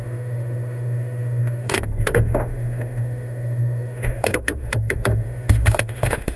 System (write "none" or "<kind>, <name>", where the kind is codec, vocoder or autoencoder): autoencoder, DAC-VAE